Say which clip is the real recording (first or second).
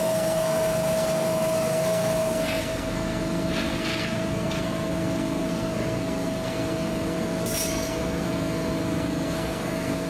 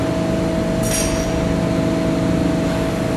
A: second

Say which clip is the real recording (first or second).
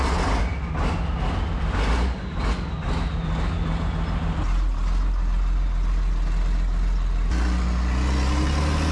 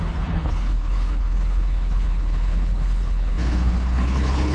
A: first